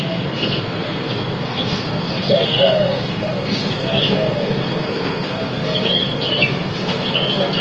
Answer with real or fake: fake